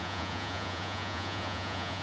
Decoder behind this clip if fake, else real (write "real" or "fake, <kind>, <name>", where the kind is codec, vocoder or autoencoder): fake, vocoder, Vocos